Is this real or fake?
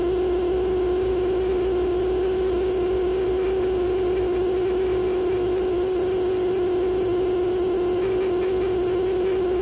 real